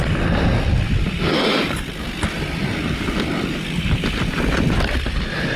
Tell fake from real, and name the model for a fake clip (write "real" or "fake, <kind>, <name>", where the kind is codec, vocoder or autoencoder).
real